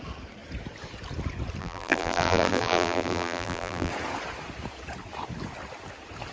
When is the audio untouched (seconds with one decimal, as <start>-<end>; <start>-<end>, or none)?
0.0-1.6; 3.9-6.3